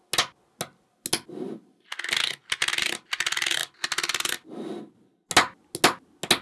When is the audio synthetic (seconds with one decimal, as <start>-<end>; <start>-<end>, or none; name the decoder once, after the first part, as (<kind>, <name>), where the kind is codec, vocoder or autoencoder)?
none